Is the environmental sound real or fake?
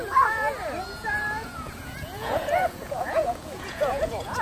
fake